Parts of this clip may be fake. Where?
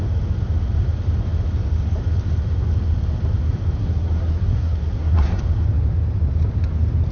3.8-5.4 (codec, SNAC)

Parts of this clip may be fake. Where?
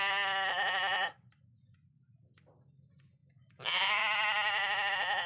none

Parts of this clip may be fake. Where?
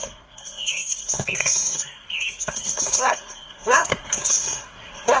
0.0-5.2 (codec, SNAC)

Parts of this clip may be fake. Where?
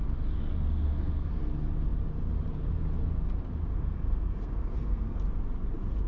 0.7-1.4 (codec, SNAC); 3.7-5.2